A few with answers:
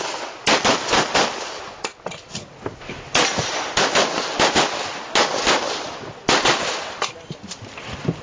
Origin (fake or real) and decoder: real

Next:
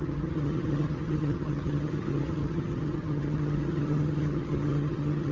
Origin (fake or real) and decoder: fake, vocoder, HiFi-GAN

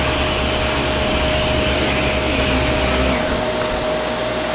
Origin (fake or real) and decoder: real